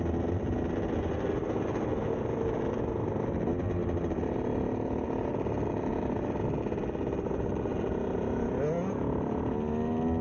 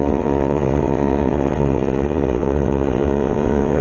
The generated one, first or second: second